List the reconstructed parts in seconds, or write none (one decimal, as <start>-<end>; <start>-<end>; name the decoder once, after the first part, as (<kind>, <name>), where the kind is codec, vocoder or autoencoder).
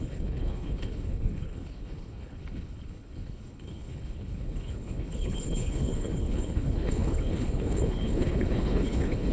0.0-9.3 (codec, HILCodec)